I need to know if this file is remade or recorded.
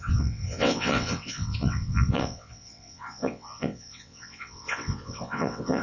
remade